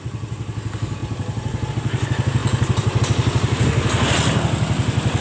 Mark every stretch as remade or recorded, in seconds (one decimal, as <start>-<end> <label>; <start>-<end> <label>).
0.0-2.4 recorded; 2.4-3.0 remade; 3.0-5.2 recorded